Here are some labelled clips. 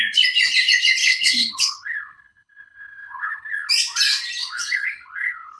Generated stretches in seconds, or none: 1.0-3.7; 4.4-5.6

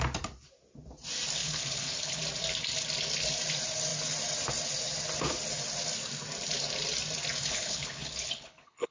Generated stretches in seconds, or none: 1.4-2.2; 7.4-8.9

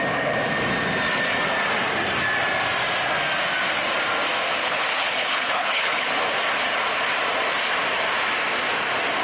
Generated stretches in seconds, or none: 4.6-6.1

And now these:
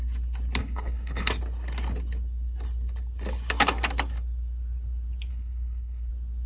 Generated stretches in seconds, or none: 0.6-1.3; 5.3-6.1

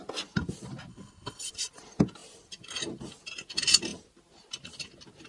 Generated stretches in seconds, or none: 0.9-1.5

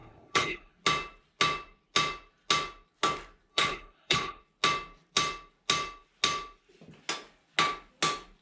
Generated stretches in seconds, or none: 0.0-0.8; 3.5-4.4